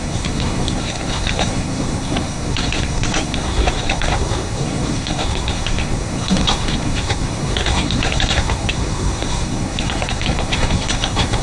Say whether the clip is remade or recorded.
remade